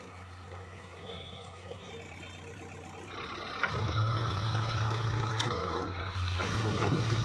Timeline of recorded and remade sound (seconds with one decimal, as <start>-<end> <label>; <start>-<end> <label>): 0.0-1.9 remade; 1.9-3.8 recorded; 3.8-7.2 remade